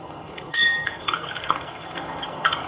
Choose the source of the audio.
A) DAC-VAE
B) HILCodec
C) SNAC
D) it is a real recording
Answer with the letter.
C